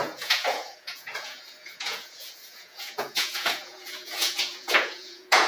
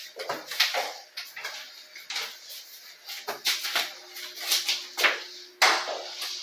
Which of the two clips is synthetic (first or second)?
first